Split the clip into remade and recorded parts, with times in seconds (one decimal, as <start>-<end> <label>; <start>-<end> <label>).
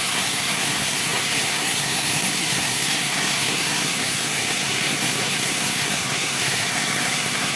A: 0.0-7.6 remade